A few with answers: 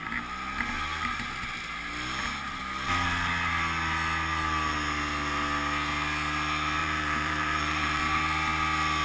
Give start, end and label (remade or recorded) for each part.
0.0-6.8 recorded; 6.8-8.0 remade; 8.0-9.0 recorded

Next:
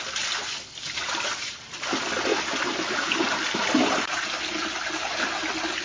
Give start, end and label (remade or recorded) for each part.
0.0-2.3 recorded; 2.3-4.4 remade; 4.4-5.8 recorded